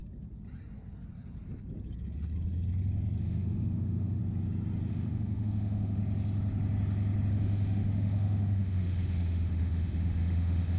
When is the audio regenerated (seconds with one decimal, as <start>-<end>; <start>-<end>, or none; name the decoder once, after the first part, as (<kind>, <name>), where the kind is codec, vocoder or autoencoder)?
3.2-4.2 (autoencoder, DAC-VAE); 4.9-6.0; 7.3-10.8